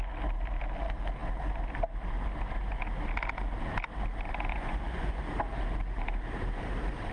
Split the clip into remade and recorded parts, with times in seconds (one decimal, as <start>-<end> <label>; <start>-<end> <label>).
0.0-4.5 recorded; 4.5-5.2 remade; 5.2-7.1 recorded